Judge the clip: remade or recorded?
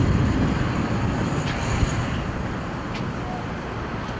recorded